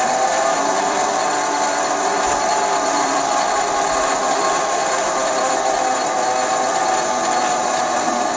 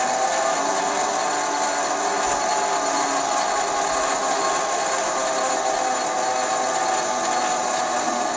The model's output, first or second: first